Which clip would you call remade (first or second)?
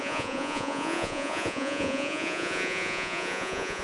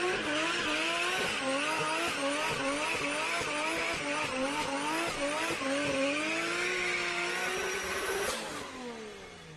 first